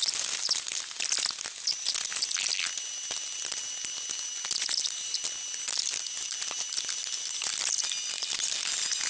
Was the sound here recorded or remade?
recorded